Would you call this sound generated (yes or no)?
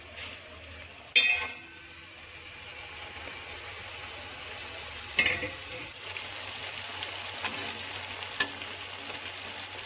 no